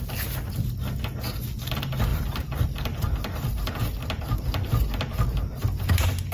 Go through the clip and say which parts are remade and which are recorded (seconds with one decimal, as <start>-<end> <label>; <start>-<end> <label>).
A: 0.0-2.1 recorded; 2.1-3.7 remade; 3.7-6.3 recorded